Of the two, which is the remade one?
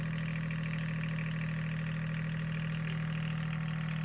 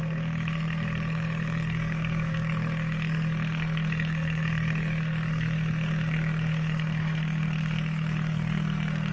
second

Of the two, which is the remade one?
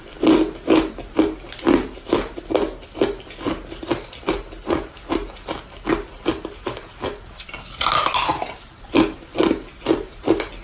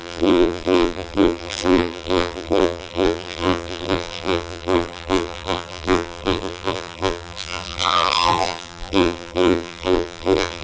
second